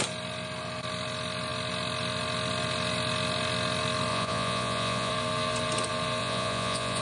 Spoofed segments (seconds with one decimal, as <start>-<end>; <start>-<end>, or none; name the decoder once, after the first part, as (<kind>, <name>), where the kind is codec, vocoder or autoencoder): 4.1-5.1 (vocoder, Vocos); 6.2-7.0